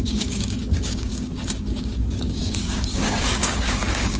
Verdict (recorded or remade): remade